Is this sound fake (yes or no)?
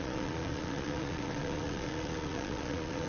yes